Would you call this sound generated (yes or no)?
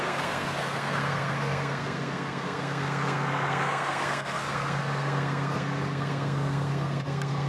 yes